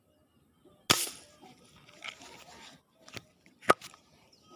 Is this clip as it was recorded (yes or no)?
yes